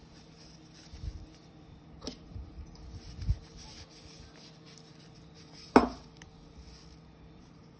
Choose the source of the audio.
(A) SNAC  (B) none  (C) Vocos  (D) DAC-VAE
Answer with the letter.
B